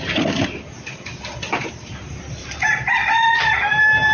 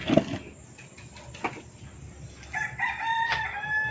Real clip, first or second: second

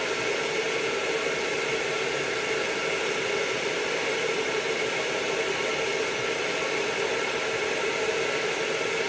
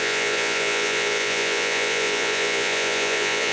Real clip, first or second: first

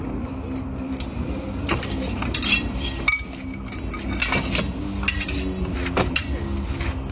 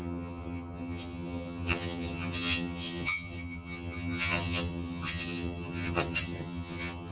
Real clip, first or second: first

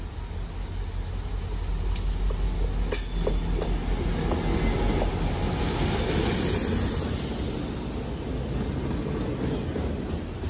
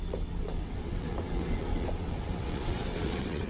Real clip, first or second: first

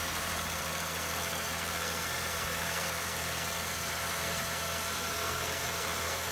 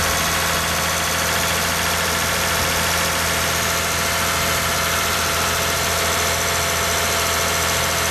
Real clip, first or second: second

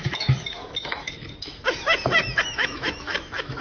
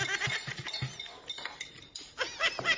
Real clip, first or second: second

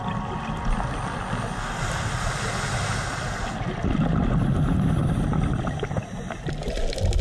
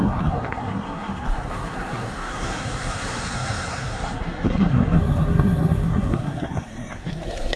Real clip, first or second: first